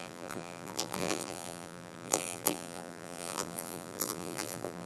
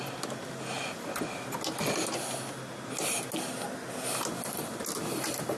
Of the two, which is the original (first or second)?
second